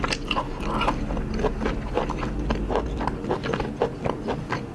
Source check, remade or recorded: recorded